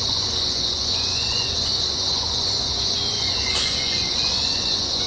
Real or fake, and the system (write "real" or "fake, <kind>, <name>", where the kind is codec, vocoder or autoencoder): fake, vocoder, Vocos